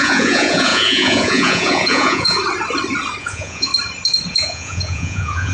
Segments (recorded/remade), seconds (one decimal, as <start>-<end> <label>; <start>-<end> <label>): 0.0-2.4 remade; 2.4-3.2 recorded; 3.2-3.7 remade; 3.7-4.3 recorded; 4.3-5.5 remade